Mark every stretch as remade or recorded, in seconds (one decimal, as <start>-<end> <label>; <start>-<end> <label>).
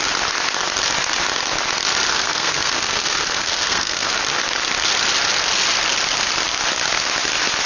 0.0-2.1 recorded; 2.1-4.1 remade; 4.1-7.7 recorded